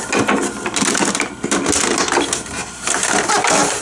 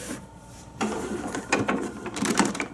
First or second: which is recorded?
first